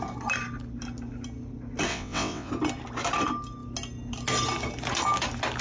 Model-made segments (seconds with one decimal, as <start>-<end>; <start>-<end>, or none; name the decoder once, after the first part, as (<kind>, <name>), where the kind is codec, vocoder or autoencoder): 1.9-2.5 (vocoder, WaveNeXt)